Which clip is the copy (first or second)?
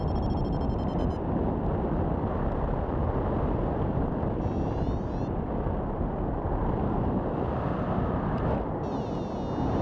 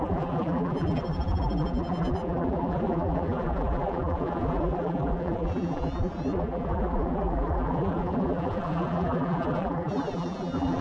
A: second